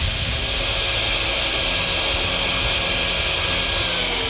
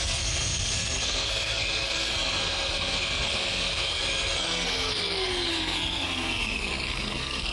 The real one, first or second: first